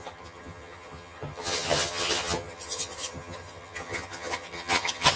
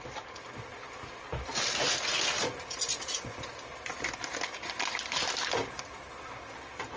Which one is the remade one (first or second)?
first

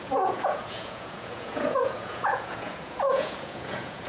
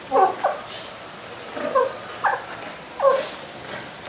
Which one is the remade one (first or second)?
first